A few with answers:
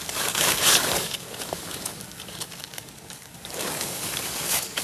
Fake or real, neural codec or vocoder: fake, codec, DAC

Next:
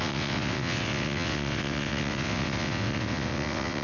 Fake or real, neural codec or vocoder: fake, vocoder, WaveNeXt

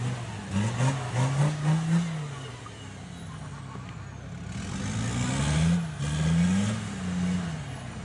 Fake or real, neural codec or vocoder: real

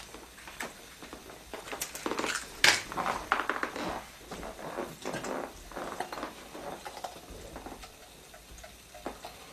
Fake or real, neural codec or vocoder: real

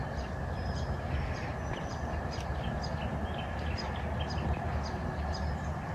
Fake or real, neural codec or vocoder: real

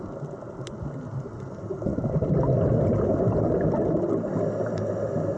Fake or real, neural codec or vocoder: real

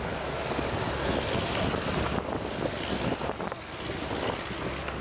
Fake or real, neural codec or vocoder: real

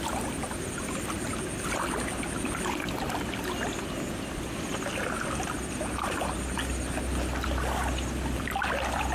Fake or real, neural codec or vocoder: real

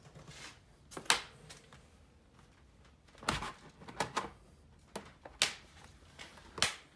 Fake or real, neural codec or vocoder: real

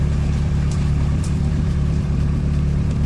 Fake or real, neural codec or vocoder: fake, vocoder, BigVGAN v2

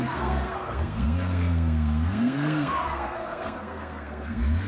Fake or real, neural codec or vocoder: fake, codec, SNAC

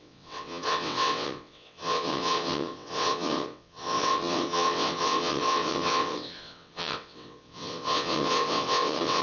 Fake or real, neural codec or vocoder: fake, vocoder, WaveNeXt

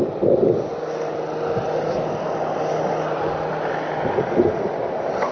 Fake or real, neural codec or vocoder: real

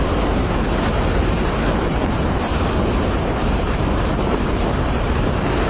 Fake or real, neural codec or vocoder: fake, vocoder, BigVGAN v2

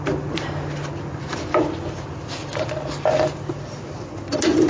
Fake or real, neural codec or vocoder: real